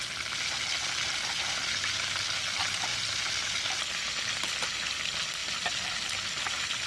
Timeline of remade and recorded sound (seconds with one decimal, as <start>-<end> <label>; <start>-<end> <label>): 0.0-6.9 recorded